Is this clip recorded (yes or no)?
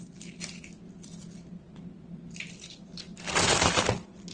yes